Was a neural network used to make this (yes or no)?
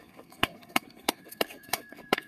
yes